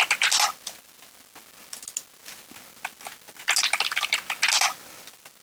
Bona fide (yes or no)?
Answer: yes